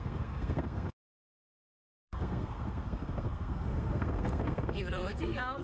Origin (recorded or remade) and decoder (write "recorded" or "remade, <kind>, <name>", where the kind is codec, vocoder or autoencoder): remade, codec, SNAC